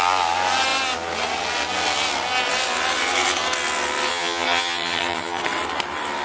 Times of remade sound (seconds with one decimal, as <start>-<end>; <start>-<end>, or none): 4.1-5.4